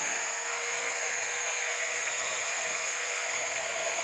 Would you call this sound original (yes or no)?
no